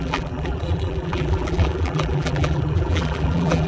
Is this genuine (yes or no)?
no